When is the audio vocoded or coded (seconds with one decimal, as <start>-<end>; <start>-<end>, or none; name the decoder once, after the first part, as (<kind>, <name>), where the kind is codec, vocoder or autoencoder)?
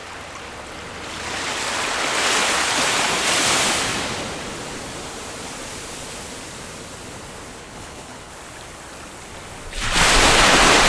7.6-8.3 (codec, HILCodec)